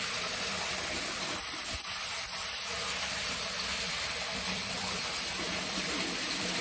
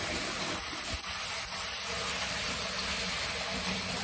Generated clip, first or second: first